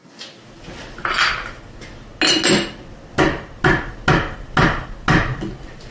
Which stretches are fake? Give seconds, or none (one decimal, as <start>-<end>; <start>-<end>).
none